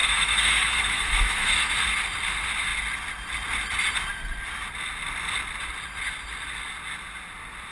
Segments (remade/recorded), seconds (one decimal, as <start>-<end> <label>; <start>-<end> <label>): 0.0-1.7 remade; 1.7-7.7 recorded